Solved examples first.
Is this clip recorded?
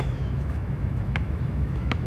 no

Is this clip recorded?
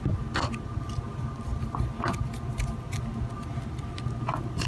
yes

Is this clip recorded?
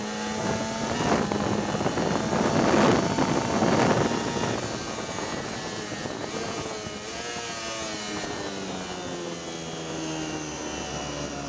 yes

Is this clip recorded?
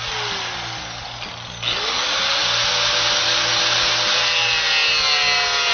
yes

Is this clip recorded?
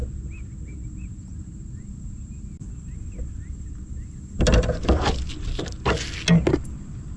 yes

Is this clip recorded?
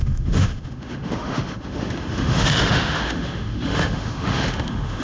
no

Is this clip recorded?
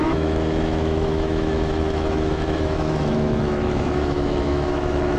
no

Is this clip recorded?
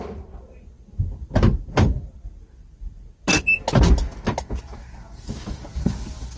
yes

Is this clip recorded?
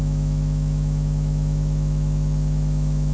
no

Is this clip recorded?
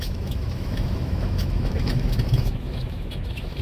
no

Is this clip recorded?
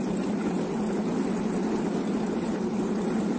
yes